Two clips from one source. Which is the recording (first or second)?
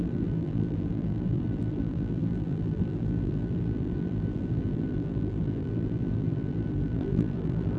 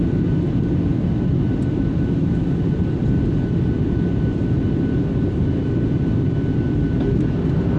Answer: second